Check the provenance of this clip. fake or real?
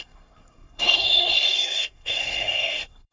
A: fake